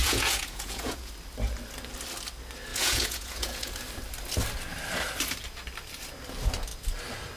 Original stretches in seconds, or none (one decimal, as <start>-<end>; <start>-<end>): 1.1-2.7; 3.7-7.4